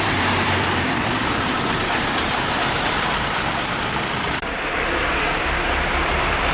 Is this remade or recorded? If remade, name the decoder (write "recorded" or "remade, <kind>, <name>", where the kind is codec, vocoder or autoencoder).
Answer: remade, vocoder, BigVGAN v2